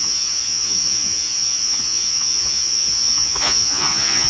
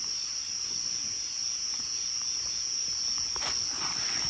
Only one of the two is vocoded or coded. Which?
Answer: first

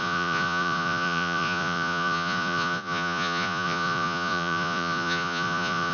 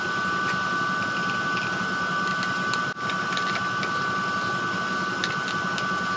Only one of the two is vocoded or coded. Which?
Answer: first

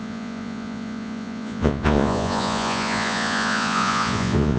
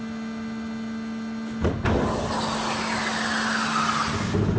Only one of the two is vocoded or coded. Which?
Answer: first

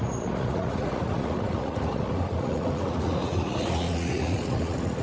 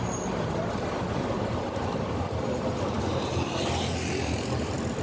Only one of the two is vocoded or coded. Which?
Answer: first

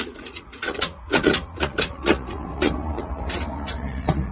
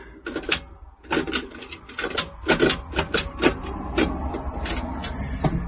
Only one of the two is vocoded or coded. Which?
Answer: first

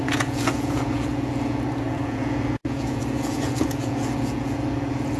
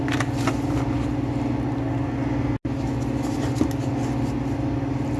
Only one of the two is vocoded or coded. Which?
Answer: first